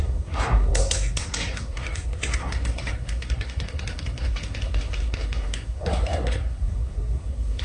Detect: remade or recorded remade